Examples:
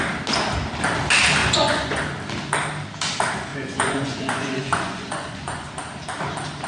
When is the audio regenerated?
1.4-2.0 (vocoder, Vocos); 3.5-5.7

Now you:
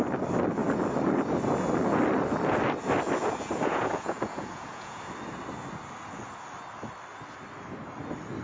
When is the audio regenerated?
3.5-5.0 (vocoder, Vocos)

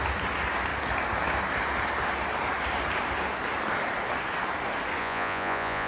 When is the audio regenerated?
5.0-5.9 (vocoder, Vocos)

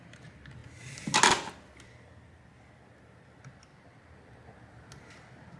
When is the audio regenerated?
none

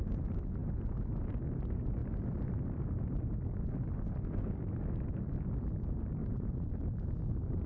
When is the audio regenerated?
6.2-6.7 (vocoder, Vocos)